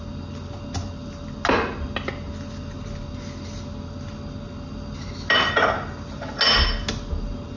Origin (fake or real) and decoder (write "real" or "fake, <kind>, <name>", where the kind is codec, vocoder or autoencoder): real